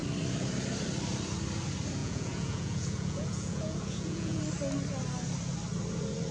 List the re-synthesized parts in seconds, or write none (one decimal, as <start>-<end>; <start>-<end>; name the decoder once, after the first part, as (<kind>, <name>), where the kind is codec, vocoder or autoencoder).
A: 2.0-4.4 (vocoder, Vocos)